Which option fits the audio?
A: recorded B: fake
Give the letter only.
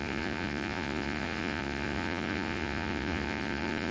B